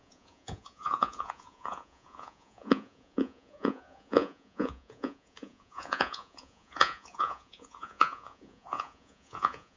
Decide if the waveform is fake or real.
fake